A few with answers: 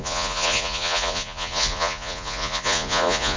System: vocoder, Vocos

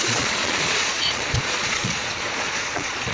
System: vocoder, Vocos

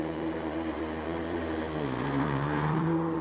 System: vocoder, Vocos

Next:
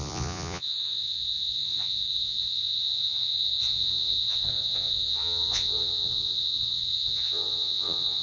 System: vocoder, Vocos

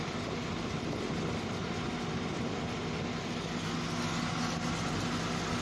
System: none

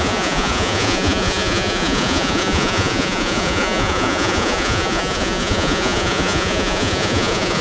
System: vocoder, Vocos